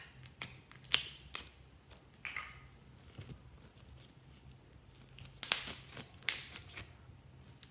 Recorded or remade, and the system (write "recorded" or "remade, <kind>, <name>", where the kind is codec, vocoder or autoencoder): recorded